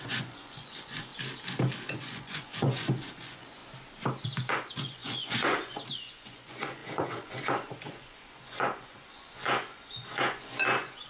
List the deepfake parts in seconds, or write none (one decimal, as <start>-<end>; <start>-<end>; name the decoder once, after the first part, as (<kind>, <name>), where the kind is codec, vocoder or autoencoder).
0.0-1.1 (vocoder, Vocos); 1.9-3.6; 4.2-11.1